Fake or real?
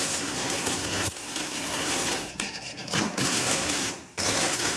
fake